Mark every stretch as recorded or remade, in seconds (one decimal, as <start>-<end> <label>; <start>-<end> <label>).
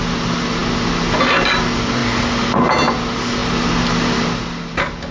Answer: 0.0-5.1 recorded